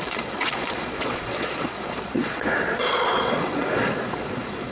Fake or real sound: fake